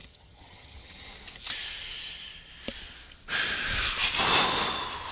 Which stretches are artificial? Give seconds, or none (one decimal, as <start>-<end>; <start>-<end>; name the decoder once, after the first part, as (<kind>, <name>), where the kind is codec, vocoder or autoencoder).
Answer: 0.0-1.1 (vocoder, HiFi-GAN)